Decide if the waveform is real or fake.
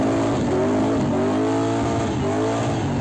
real